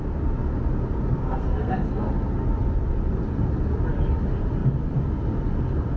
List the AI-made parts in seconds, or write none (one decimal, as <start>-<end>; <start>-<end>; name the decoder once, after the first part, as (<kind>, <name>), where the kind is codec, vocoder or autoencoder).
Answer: 1.2-2.1 (codec, SNAC)